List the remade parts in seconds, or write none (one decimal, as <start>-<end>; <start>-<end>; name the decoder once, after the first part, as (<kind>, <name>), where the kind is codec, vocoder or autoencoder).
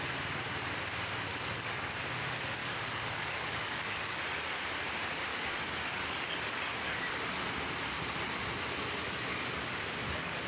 1.3-1.9 (codec, DAC); 2.6-4.6; 5.3-7.1; 9.3-10.5